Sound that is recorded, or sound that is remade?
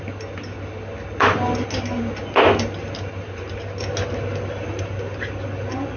recorded